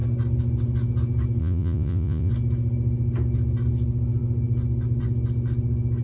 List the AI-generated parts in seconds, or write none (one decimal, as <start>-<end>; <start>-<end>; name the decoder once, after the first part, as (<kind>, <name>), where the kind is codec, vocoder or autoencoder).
1.4-2.3 (vocoder, Vocos)